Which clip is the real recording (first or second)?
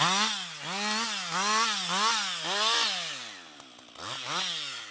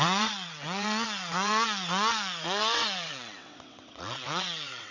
first